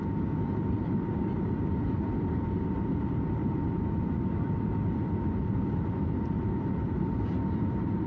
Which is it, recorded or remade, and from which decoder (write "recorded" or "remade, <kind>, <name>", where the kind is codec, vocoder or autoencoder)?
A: remade, vocoder, BigVGAN v2